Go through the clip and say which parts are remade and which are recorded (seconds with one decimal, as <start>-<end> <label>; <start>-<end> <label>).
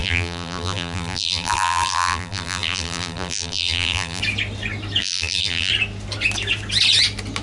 0.0-4.2 remade; 4.2-5.0 recorded; 5.0-5.7 remade; 5.7-7.4 recorded